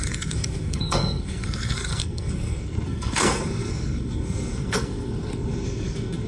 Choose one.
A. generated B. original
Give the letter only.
A